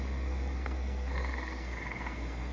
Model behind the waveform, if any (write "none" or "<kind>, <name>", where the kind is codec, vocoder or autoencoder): codec, SNAC